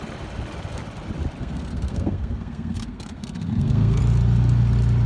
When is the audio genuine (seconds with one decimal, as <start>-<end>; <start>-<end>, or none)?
0.0-1.4; 4.0-5.1